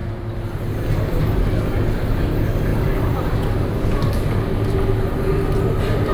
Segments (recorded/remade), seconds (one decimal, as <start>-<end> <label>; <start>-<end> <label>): 0.0-1.2 remade; 1.2-2.7 recorded; 2.7-4.1 remade; 4.1-6.1 recorded